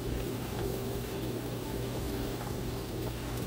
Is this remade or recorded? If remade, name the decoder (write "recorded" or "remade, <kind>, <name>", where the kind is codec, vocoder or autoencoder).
remade, codec, DAC